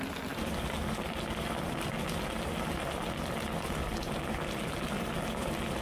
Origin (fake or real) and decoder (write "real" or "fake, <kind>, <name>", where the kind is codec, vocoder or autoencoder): real